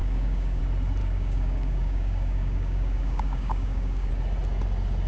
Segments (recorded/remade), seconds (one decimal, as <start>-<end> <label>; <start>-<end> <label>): 0.0-0.6 remade; 0.6-1.0 recorded; 1.0-4.1 remade; 4.1-5.1 recorded

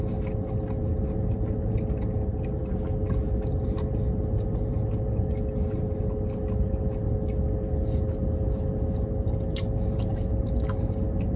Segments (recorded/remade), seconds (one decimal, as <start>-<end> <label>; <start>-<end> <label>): 0.0-11.4 recorded

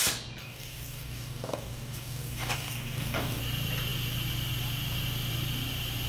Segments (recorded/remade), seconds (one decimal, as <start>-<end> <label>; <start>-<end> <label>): 0.0-0.4 recorded; 0.4-3.4 remade; 3.4-6.1 recorded

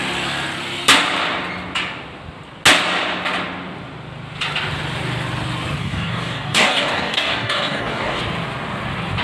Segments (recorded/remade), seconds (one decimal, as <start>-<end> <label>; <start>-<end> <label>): 0.0-5.8 recorded; 5.8-8.2 remade; 8.2-9.2 recorded

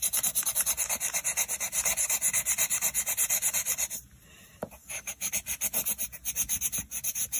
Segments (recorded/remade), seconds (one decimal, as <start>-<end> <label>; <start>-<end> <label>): 0.0-4.8 recorded; 4.8-5.3 remade; 5.3-7.4 recorded